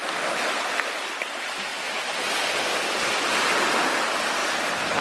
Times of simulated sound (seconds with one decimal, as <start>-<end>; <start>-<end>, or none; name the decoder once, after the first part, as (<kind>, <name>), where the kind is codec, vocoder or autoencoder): 0.0-5.0 (vocoder, BigVGAN v2)